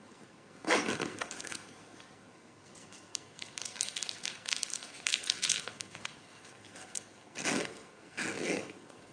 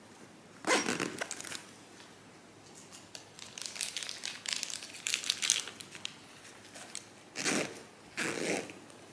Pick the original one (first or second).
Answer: second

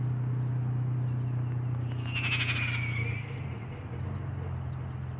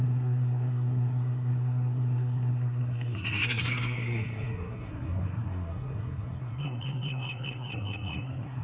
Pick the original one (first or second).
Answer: first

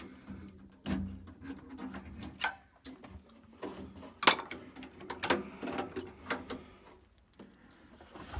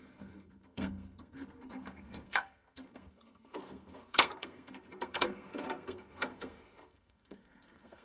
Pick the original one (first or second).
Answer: first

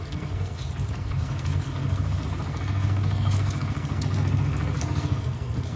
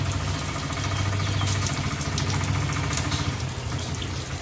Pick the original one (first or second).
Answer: second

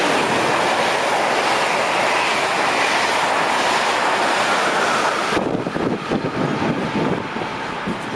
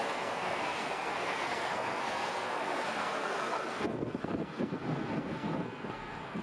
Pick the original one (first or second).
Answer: first